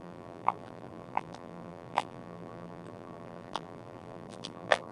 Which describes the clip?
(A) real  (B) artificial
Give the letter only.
B